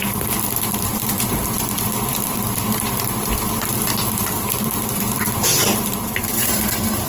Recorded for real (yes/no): no